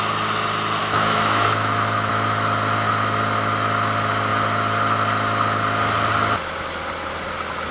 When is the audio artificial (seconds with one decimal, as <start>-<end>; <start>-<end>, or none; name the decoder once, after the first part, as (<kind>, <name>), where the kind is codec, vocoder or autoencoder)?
0.8-2.1 (autoencoder, DAC-VAE)